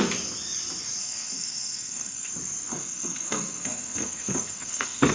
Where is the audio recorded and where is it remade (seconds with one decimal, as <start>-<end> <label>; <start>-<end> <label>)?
0.0-1.0 recorded; 1.0-2.3 remade; 2.3-2.7 recorded; 2.7-5.1 remade